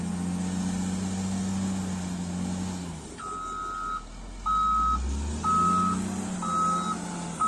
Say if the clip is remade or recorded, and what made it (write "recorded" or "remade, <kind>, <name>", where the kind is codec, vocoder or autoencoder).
recorded